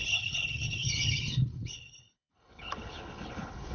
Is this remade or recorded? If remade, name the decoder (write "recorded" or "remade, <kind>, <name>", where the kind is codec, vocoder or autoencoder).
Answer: remade, codec, HILCodec